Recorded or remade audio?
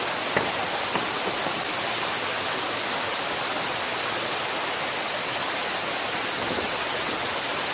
recorded